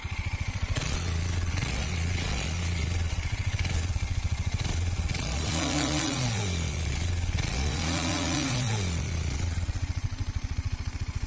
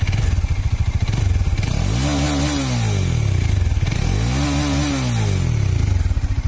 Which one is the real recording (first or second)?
second